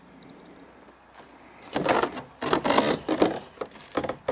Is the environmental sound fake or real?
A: real